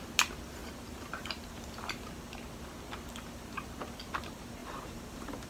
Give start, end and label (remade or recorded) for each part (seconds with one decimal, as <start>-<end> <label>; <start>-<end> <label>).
0.0-0.6 recorded; 0.6-2.0 remade; 2.0-4.6 recorded; 4.6-5.5 remade